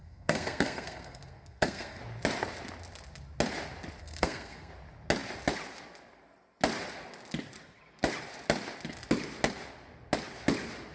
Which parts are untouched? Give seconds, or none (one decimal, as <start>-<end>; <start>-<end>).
2.0-4.0; 4.7-10.9